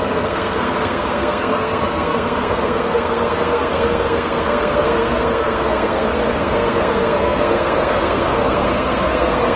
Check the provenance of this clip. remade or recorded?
remade